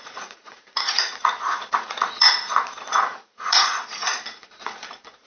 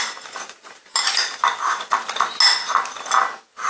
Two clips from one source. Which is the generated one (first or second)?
first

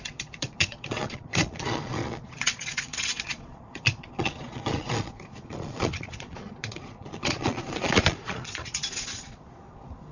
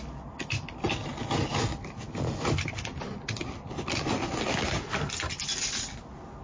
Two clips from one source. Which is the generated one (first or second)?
first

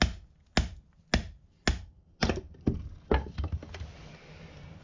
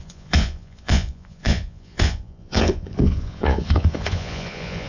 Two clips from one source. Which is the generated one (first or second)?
second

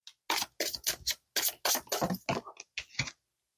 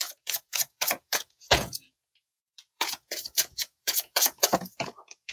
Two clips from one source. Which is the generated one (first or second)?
second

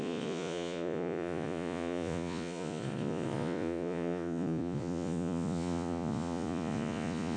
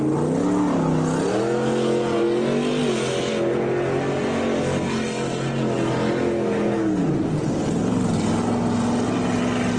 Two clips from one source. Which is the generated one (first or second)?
first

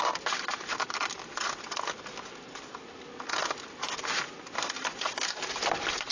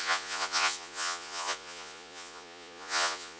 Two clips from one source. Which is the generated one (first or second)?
second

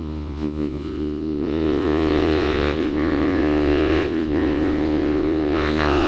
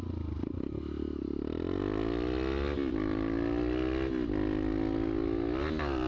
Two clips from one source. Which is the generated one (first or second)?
first